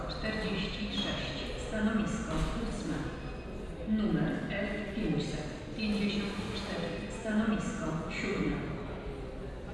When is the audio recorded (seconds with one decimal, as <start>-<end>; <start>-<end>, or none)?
0.0-7.2; 8.6-9.7